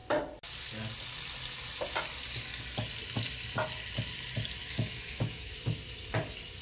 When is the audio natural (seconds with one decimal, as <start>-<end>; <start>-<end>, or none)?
0.0-4.6; 5.5-6.6